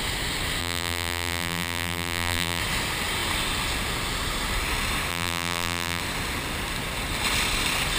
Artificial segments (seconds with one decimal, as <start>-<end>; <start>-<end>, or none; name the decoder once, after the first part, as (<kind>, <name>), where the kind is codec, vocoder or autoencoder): 0.6-2.6 (vocoder, BigVGAN v2); 5.1-6.0